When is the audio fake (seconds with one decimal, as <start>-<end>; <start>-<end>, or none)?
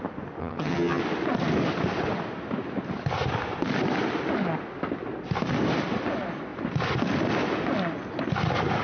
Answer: 0.4-1.0